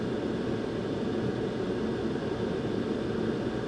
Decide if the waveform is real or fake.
fake